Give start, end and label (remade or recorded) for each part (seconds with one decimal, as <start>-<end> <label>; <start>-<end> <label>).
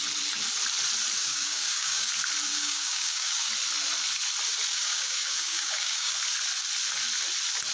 0.0-1.2 recorded; 1.2-2.1 remade; 2.1-2.5 recorded; 2.5-3.5 remade; 3.5-4.7 recorded; 4.7-6.1 remade; 6.1-7.7 recorded